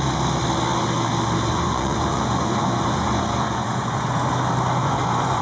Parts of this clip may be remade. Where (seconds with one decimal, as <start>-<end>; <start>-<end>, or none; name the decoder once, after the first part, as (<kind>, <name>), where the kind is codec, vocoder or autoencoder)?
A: 1.5-4.3 (vocoder, Vocos); 4.8-5.4